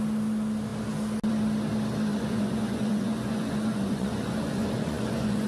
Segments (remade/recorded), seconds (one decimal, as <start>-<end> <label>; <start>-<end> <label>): 0.0-2.1 recorded; 2.1-5.5 remade